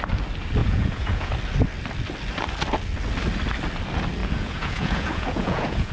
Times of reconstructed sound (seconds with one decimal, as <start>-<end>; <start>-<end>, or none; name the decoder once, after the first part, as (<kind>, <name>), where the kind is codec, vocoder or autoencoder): 0.6-1.3 (vocoder, Vocos); 4.2-5.9